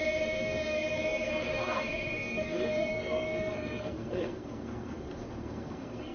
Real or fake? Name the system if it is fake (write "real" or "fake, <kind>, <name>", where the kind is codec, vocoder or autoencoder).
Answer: fake, codec, SNAC